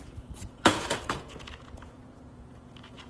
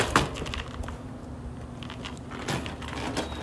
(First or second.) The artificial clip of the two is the first